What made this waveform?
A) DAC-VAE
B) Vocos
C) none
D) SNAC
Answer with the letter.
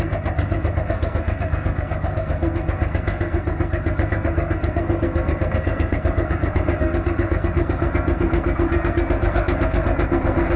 D